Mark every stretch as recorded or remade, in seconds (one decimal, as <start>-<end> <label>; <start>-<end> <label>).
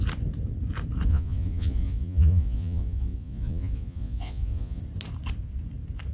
0.0-1.1 recorded; 1.1-4.8 remade; 4.8-6.1 recorded